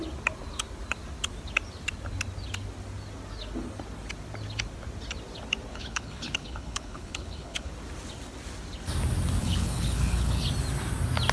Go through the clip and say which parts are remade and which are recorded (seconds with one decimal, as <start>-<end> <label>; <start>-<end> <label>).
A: 0.0-5.7 recorded; 5.7-7.7 remade; 7.7-9.4 recorded; 9.4-10.4 remade; 10.4-11.3 recorded